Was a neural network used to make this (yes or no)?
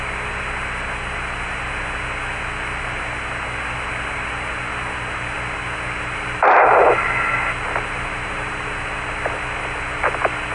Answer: no